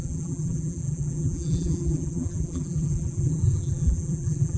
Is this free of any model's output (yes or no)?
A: no